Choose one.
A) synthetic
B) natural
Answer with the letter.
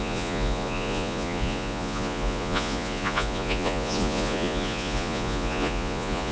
A